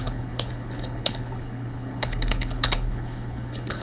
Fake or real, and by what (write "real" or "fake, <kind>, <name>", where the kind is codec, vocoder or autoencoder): fake, codec, HILCodec